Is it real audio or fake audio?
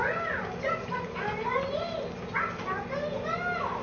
real